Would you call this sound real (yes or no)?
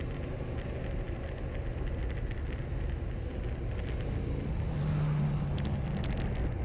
yes